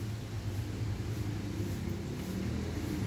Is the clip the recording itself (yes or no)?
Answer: yes